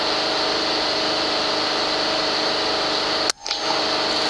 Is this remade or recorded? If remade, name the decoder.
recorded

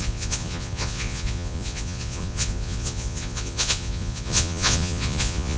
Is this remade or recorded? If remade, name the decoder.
remade, vocoder, Vocos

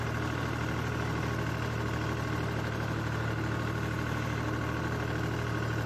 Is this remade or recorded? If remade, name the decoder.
recorded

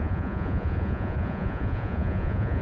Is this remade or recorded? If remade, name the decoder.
remade, vocoder, Vocos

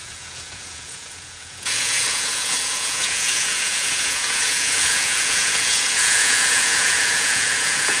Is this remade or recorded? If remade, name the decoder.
remade, vocoder, Vocos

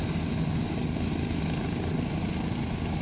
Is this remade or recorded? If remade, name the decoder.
recorded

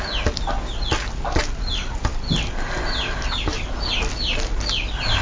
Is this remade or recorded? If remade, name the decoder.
recorded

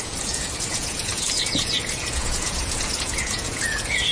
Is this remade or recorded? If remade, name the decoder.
remade, vocoder, Vocos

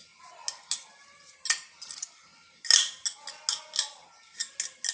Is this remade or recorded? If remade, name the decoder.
recorded